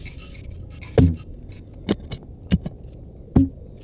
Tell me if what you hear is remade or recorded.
recorded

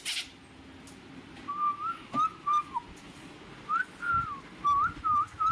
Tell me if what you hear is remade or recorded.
recorded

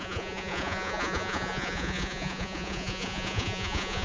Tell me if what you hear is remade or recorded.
remade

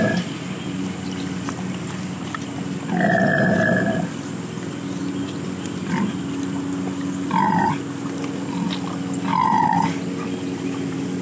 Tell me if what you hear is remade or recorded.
recorded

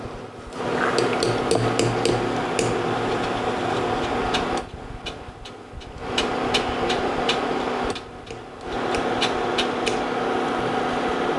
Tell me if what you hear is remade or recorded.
recorded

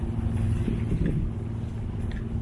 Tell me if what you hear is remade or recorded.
recorded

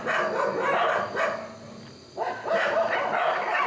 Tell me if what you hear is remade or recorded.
recorded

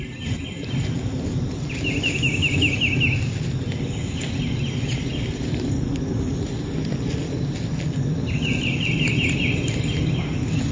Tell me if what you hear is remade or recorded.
recorded